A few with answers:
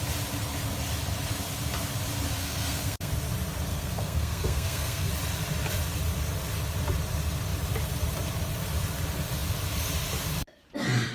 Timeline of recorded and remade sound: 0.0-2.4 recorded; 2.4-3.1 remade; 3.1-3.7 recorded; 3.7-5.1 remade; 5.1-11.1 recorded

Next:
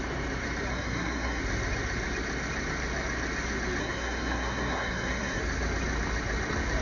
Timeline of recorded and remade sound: 0.0-0.7 recorded; 0.7-1.4 remade; 1.4-3.8 recorded; 3.8-5.4 remade; 5.4-6.8 recorded

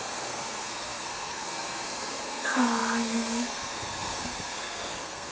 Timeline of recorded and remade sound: 0.0-5.3 remade

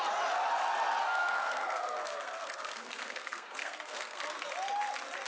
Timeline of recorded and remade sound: 0.0-1.0 recorded; 1.0-4.2 remade; 4.2-5.3 recorded

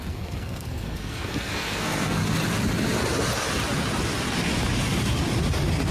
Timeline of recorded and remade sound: 0.0-2.2 remade; 2.2-5.9 recorded

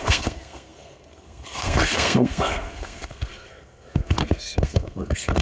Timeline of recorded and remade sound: 0.0-5.4 remade

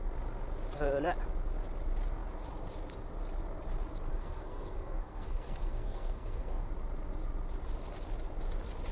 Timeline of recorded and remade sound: 0.0-4.1 recorded; 4.1-6.7 remade; 6.7-8.9 recorded